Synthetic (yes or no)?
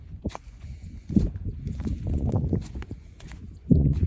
yes